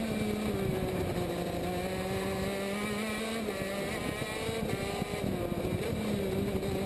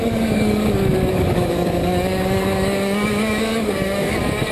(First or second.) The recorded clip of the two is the first